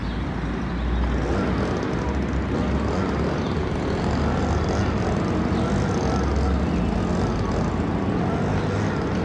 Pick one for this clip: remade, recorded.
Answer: recorded